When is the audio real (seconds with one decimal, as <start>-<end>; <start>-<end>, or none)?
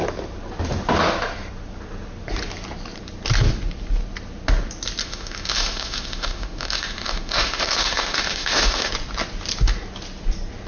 0.0-5.0; 8.9-10.7